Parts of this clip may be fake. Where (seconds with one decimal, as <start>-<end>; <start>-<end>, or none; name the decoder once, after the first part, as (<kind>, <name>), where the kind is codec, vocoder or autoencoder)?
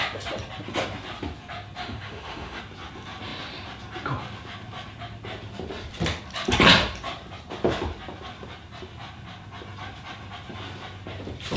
1.8-2.6 (autoencoder, DAC-VAE)